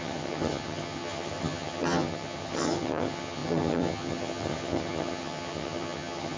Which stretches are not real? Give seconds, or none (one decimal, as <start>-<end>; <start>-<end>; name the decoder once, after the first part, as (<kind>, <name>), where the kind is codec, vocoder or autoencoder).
0.0-6.4 (vocoder, HiFi-GAN)

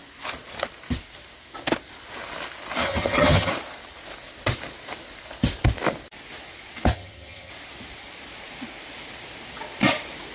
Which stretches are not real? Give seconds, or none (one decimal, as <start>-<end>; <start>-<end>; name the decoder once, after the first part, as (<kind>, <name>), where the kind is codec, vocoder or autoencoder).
2.8-3.5 (vocoder, HiFi-GAN); 6.9-7.5